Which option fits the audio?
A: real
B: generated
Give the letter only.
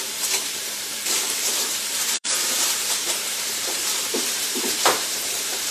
B